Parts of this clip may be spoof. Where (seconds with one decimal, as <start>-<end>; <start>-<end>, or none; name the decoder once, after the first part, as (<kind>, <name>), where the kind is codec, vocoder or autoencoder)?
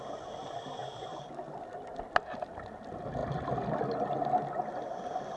none